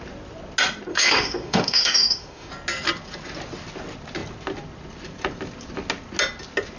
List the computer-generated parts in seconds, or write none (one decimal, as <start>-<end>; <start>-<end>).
0.9-2.5